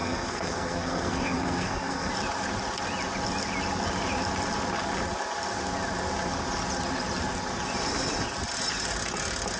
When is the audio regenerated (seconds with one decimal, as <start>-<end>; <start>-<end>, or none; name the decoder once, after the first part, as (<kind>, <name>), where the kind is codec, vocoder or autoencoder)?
0.0-2.1 (codec, SNAC)